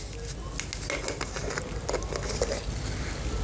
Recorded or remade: recorded